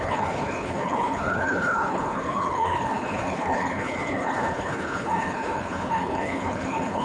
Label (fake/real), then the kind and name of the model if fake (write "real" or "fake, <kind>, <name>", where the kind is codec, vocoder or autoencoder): fake, codec, HILCodec